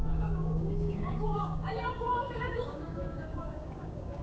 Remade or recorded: remade